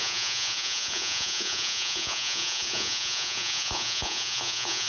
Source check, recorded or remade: remade